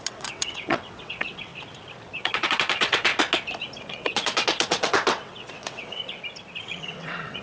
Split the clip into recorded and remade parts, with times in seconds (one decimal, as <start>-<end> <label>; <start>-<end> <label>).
0.0-1.5 remade; 1.5-2.2 recorded; 2.2-3.1 remade; 3.1-3.9 recorded; 3.9-6.0 remade; 6.0-6.6 recorded; 6.6-7.4 remade